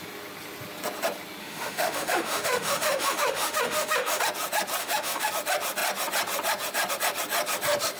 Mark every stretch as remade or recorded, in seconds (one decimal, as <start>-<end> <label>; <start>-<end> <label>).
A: 0.0-1.4 recorded; 1.4-4.2 remade; 4.2-4.8 recorded; 4.8-5.3 remade; 5.3-8.0 recorded